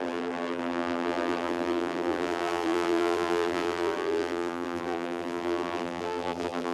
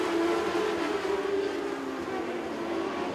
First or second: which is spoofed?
first